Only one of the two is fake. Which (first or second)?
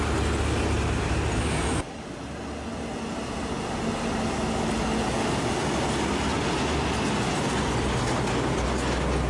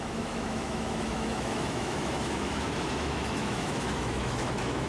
second